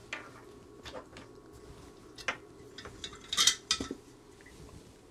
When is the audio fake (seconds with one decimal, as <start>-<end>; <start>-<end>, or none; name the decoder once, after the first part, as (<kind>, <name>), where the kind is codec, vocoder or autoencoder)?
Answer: none

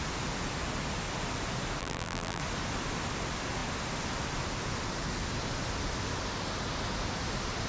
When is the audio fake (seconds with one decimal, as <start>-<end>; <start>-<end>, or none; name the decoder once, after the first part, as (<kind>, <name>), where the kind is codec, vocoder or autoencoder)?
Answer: 1.8-2.4 (vocoder, BigVGAN v2)

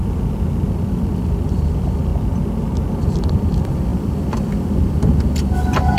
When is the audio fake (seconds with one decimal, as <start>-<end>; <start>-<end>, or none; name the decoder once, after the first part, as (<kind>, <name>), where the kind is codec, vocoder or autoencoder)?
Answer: 0.7-2.1 (vocoder, BigVGAN v2); 2.9-6.0

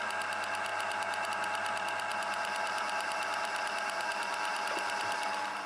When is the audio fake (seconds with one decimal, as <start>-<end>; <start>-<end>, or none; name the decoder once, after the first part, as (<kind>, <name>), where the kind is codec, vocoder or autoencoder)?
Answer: 0.7-1.3 (vocoder, BigVGAN v2); 2.1-5.7